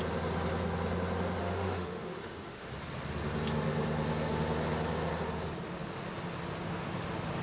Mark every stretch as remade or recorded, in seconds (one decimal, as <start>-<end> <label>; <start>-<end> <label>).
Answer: 0.0-1.4 recorded; 1.4-2.7 remade; 2.7-7.4 recorded